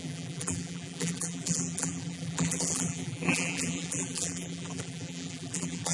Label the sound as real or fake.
fake